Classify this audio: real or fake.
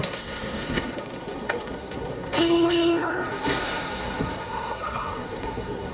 fake